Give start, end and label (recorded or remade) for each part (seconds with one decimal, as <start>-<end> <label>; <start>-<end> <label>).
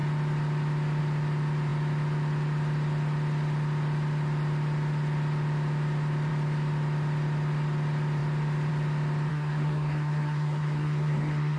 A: 0.0-9.3 recorded; 9.3-11.6 remade